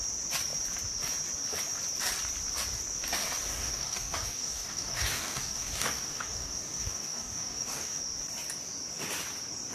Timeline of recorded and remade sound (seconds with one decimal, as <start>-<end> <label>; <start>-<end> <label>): 0.0-3.5 recorded; 3.5-8.0 remade; 8.0-9.7 recorded